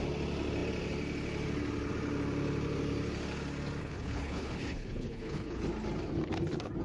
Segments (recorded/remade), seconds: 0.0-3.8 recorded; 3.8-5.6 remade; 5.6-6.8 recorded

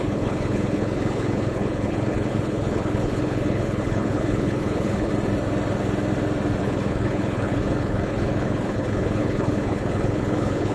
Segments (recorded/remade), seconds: 0.0-5.1 remade; 5.1-6.6 recorded; 6.6-10.7 remade

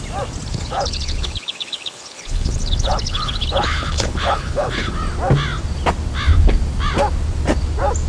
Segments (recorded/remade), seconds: 0.0-0.5 recorded; 0.5-4.9 remade; 4.9-8.1 recorded

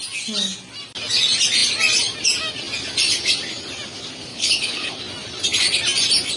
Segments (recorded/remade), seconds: 0.0-4.3 recorded; 4.3-4.9 remade; 4.9-6.4 recorded

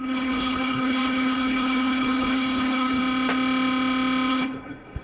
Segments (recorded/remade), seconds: 0.0-3.0 remade; 3.0-4.3 recorded; 4.3-5.0 remade